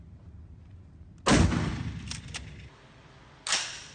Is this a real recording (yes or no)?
yes